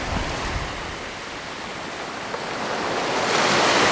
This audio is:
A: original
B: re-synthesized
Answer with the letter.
A